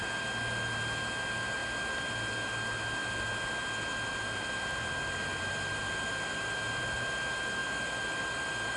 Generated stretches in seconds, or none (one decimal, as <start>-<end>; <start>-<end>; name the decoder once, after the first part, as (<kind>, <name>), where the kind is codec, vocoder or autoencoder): none

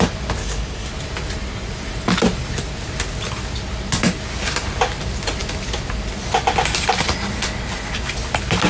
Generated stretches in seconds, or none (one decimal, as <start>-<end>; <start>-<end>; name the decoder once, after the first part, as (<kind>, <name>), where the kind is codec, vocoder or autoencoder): 0.4-0.9 (codec, DAC)

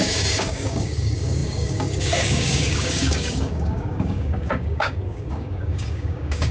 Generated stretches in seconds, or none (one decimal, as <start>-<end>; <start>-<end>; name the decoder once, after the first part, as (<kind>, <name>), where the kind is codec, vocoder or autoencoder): 0.0-6.5 (codec, DAC)